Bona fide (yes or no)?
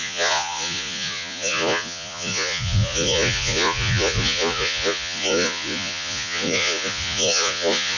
no